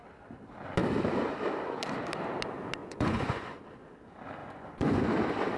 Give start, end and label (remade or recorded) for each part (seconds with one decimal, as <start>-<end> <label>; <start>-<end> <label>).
0.0-2.8 recorded; 2.8-3.6 remade; 3.6-4.4 recorded; 4.4-5.0 remade; 5.0-5.6 recorded